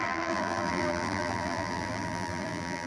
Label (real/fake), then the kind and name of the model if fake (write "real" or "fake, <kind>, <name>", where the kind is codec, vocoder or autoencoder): fake, vocoder, BigVGAN v2